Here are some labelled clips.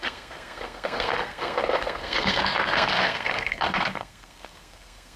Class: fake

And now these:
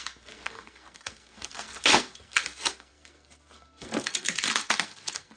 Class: fake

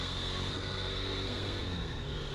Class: fake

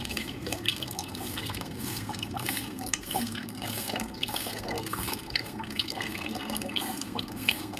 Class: fake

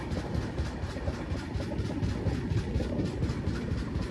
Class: real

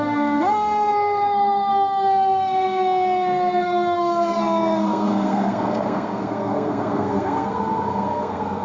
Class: fake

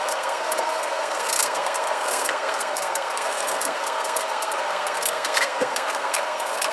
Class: fake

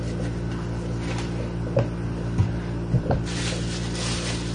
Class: real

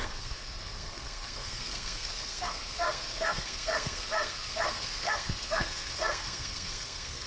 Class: fake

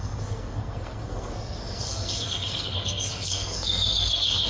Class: fake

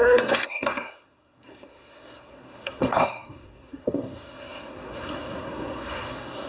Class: fake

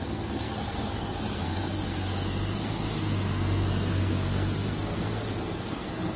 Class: fake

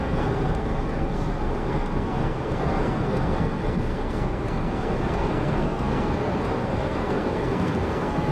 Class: fake